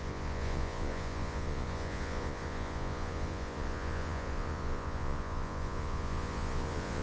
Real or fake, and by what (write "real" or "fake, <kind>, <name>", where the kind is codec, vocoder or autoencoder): fake, vocoder, Vocos